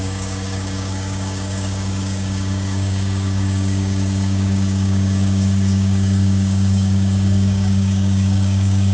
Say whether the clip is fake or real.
fake